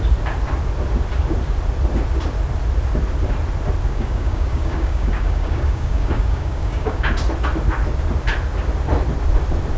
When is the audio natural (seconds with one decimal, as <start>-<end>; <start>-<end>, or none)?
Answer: 0.0-3.9; 7.1-9.8